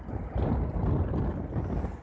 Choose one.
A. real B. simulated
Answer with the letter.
A